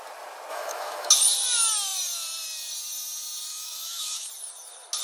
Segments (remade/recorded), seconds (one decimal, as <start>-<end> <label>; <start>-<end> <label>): 0.0-0.5 recorded; 0.5-1.1 remade; 1.1-3.5 recorded; 3.5-4.3 remade; 4.3-5.0 recorded